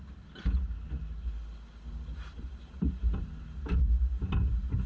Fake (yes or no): no